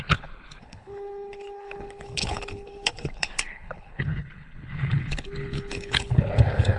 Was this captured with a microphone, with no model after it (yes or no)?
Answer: no